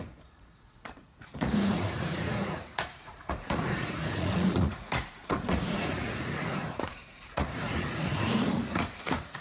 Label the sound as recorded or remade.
remade